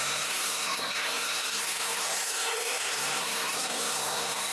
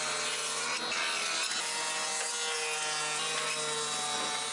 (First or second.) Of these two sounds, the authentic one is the second